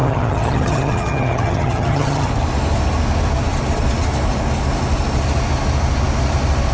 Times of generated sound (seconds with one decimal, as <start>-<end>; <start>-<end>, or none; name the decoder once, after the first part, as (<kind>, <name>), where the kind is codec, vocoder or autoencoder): 0.0-2.3 (vocoder, HiFi-GAN)